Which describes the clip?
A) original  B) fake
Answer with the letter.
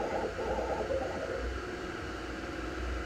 A